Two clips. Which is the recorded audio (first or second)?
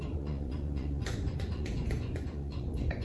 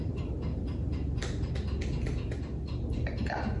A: second